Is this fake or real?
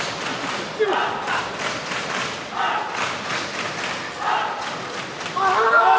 real